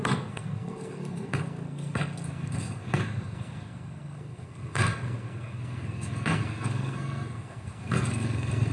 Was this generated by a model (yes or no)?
yes